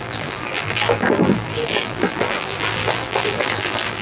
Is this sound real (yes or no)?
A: no